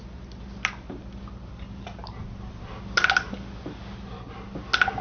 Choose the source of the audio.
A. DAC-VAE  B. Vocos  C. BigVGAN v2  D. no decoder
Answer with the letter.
D